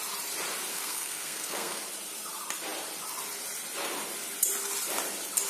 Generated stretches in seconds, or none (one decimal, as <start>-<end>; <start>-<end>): 0.7-1.8